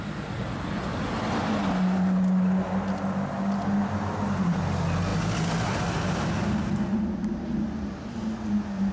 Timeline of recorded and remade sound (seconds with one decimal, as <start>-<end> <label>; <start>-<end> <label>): 0.0-8.9 recorded